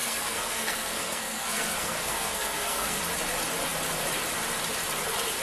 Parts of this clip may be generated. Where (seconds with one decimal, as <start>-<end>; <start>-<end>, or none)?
0.0-3.0